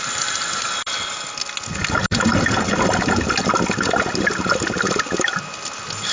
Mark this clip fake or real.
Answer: real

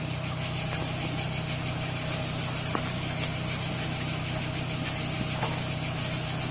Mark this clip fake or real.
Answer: real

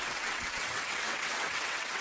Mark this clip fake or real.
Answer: fake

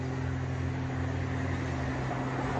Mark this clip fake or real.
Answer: real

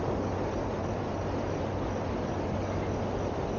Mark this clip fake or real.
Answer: real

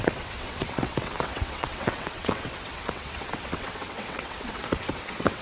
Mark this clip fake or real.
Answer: fake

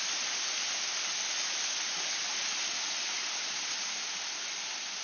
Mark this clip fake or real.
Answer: real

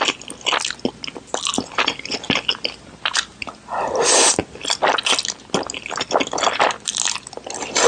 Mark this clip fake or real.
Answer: real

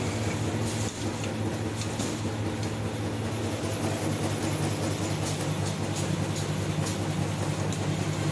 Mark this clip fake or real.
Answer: real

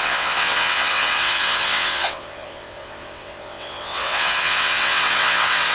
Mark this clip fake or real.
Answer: fake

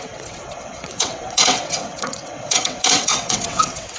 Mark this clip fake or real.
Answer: fake